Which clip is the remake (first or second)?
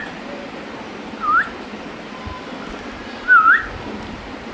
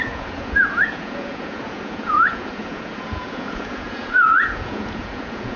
second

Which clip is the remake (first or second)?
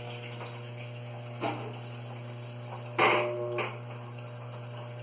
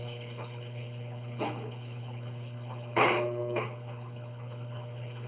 second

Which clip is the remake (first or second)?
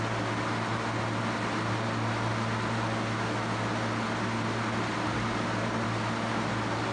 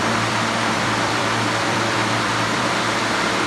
second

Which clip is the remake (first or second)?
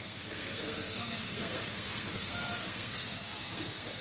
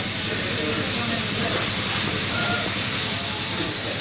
first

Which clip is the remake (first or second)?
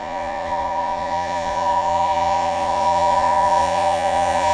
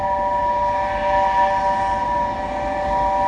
first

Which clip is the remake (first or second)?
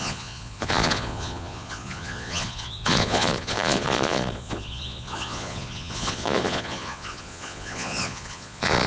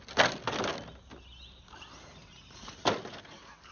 first